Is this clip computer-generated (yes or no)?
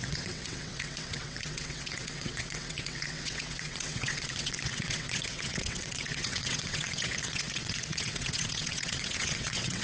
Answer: yes